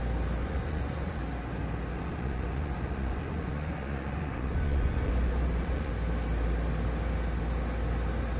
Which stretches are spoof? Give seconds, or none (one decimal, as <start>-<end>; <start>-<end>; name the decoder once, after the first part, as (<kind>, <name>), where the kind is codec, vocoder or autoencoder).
0.4-1.2 (vocoder, Vocos); 1.9-5.9

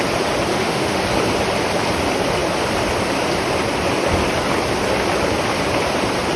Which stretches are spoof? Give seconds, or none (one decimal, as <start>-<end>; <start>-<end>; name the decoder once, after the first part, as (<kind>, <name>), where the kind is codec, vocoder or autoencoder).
0.5-1.0 (autoencoder, DAC-VAE)

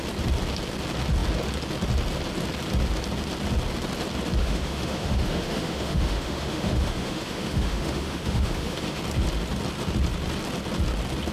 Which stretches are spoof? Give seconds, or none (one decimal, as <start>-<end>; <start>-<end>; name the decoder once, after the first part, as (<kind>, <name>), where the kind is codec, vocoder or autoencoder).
4.4-9.0 (autoencoder, DAC-VAE)

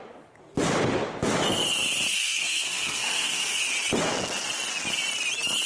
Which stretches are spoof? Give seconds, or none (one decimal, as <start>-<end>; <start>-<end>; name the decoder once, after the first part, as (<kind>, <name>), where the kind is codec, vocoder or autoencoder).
2.1-3.6 (codec, SNAC)

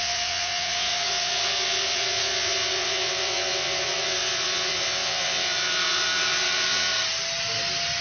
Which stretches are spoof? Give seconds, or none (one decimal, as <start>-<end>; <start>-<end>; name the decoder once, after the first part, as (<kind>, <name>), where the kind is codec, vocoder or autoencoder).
0.0-6.9 (vocoder, WaveNeXt)

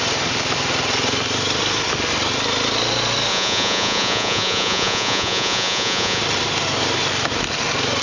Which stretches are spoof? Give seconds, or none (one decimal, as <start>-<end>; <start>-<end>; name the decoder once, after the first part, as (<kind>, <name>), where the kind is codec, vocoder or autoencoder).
3.3-6.2 (vocoder, Vocos)

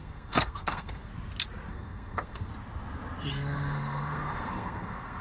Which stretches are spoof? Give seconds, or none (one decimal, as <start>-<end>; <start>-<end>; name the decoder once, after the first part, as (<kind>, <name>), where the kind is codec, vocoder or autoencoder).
0.0-1.1 (codec, SNAC); 1.7-2.5; 3.3-5.2